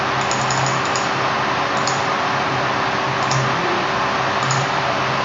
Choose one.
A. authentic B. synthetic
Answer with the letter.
A